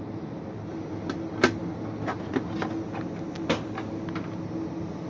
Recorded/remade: recorded